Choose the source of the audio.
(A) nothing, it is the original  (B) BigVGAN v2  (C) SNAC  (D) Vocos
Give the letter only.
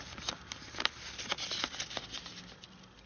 A